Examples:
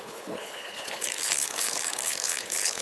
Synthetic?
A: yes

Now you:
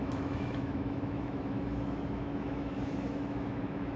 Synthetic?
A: yes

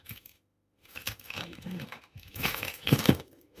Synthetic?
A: yes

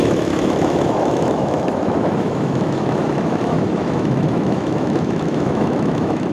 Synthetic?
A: yes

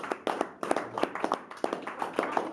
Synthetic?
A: no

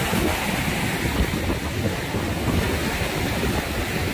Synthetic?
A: no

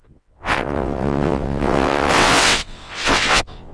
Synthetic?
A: yes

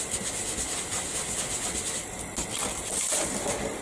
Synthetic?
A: no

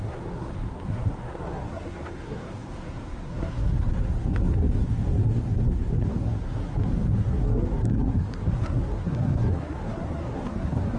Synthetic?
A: yes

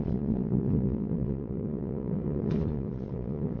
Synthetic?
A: yes